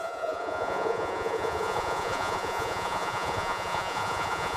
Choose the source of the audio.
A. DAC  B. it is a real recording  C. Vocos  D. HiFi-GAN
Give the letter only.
C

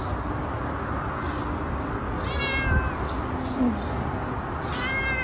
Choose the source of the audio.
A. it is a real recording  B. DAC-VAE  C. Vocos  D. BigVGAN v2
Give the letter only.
A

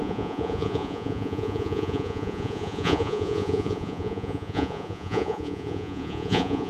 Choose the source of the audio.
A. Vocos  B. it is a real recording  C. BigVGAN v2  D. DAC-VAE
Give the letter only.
A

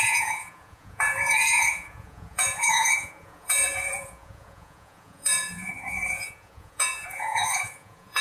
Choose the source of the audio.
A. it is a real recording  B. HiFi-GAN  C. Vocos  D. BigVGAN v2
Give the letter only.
C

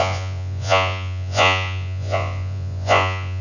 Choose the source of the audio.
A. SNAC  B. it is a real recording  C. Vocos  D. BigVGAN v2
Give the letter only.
C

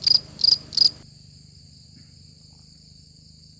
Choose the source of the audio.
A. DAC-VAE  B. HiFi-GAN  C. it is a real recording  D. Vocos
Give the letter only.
C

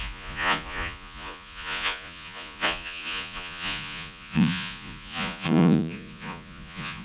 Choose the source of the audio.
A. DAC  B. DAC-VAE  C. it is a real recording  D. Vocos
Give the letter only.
D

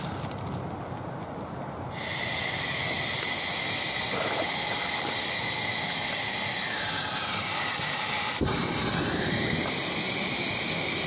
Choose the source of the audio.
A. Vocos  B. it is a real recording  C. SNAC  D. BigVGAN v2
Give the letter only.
B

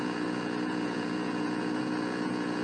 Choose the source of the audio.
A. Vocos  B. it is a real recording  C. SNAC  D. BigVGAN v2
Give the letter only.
A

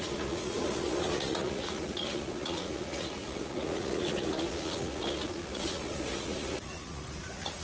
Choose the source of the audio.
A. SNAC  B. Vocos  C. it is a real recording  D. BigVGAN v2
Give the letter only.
B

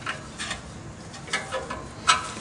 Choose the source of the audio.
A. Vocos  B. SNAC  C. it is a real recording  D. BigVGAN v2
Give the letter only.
C